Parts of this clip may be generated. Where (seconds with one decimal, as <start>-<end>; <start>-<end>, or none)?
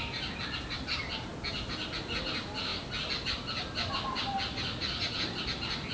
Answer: none